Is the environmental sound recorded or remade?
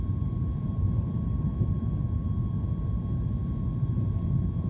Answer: remade